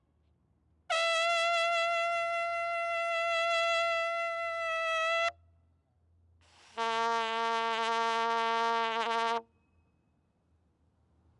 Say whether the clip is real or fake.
real